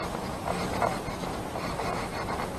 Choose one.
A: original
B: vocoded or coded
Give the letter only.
A